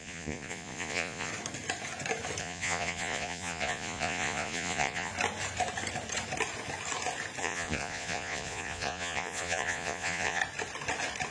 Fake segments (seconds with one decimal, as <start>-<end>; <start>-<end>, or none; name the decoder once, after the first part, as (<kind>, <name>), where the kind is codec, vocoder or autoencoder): 0.0-1.3 (vocoder, Vocos); 2.4-5.1; 7.4-10.4